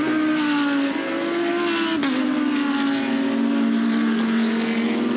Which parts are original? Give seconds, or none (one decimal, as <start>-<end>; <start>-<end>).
0.0-5.2